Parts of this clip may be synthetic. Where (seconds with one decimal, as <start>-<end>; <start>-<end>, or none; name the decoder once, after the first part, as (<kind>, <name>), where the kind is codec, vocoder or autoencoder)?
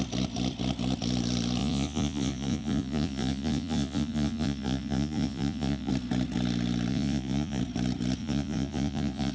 1.6-5.9 (vocoder, Vocos); 6.9-7.6; 8.2-9.3